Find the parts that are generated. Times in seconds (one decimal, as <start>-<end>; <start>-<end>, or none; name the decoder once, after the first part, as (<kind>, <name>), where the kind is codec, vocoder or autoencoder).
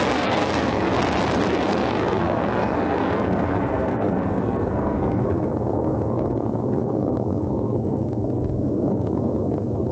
0.0-0.9 (codec, SNAC); 1.5-9.9